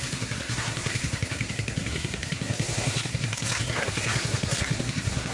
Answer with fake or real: fake